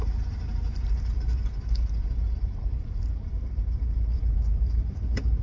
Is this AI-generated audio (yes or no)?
yes